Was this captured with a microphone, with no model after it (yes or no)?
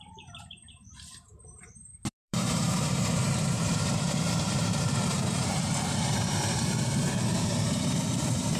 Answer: no